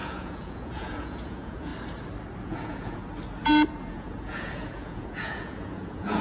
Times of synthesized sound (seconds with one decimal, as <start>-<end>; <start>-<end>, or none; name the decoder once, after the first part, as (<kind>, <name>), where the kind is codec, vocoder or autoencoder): 0.0-1.7 (vocoder, Vocos); 2.4-3.0; 3.9-6.2